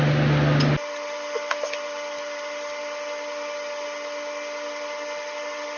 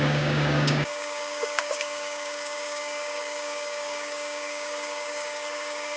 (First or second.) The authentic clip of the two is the first